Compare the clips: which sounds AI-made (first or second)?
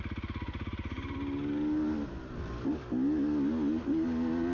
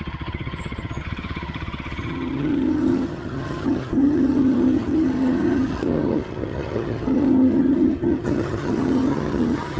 second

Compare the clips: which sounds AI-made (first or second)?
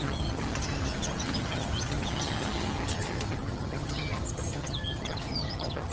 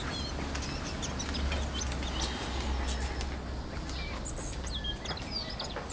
first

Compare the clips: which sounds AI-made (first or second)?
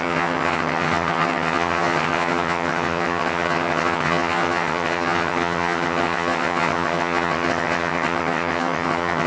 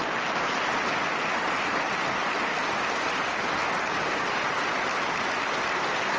first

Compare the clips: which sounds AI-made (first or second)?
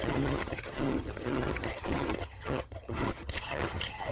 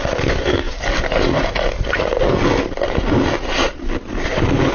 first